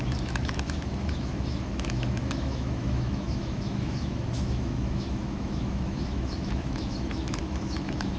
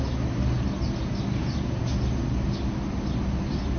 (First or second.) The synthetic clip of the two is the first